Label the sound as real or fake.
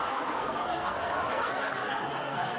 fake